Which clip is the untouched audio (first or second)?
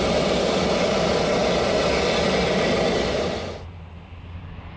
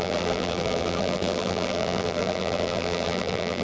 first